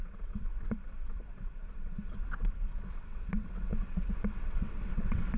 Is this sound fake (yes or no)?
yes